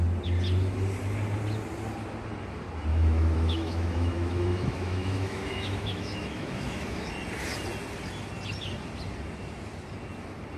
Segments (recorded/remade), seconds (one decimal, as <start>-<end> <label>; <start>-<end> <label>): 0.0-2.9 recorded; 2.9-7.1 remade; 7.1-10.6 recorded